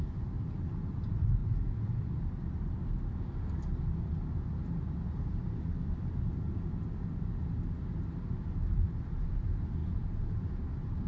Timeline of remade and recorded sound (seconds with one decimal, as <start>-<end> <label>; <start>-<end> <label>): 0.0-9.8 recorded; 9.8-10.6 remade; 10.6-11.1 recorded